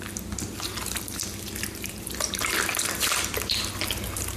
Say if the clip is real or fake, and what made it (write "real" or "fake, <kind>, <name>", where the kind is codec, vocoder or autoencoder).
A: real